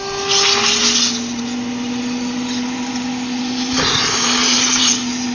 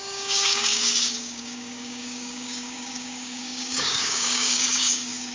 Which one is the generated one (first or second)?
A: second